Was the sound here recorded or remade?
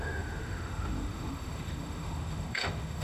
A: remade